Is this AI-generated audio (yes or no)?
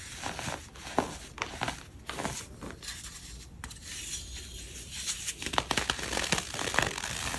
no